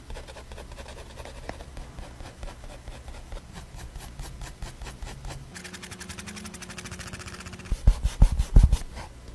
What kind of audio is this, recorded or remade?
recorded